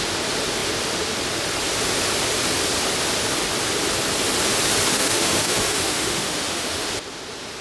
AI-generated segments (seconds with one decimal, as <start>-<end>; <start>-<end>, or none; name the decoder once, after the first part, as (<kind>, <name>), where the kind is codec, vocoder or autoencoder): 4.9-6.9 (autoencoder, DAC-VAE)